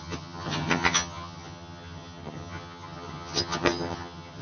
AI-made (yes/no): yes